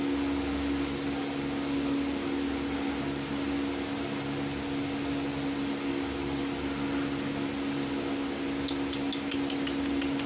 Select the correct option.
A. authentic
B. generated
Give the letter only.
A